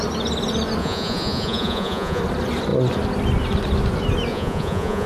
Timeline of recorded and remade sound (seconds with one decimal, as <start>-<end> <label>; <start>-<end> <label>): 0.0-0.8 recorded; 0.8-2.2 remade; 2.2-4.3 recorded; 4.3-5.1 remade